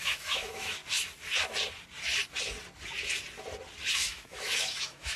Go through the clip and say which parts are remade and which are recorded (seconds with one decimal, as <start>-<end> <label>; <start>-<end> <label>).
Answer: 0.0-0.8 remade; 0.8-3.9 recorded; 3.9-5.2 remade